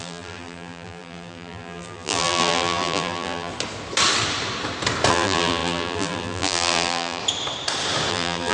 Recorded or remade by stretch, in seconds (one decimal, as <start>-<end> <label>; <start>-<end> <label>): 0.0-3.5 remade; 3.5-5.1 recorded; 5.1-7.2 remade; 7.2-8.1 recorded; 8.1-8.5 remade